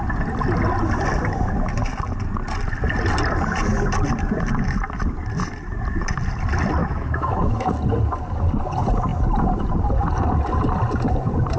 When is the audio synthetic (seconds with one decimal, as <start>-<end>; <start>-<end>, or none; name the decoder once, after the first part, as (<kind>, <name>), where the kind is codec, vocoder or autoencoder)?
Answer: 6.8-7.7 (autoencoder, DAC-VAE)